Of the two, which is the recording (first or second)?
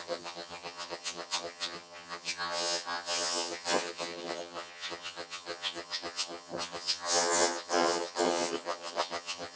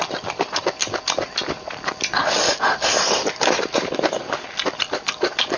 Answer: second